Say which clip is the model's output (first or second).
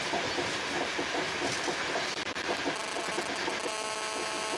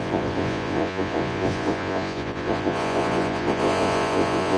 second